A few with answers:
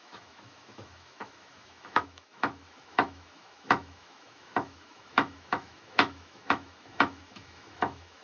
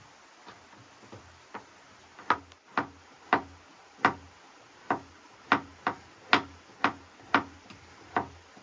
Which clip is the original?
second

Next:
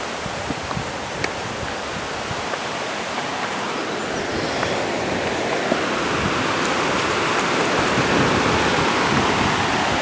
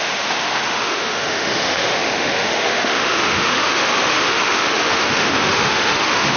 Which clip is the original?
first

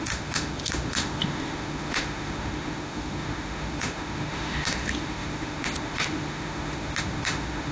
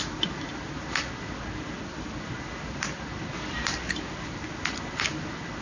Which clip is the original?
second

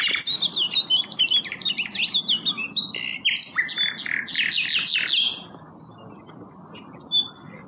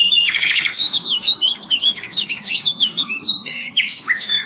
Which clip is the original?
first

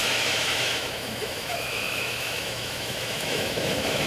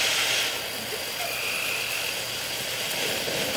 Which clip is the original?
second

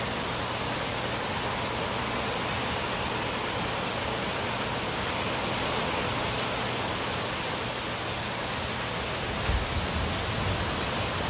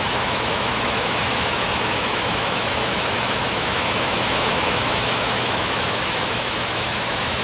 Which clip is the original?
first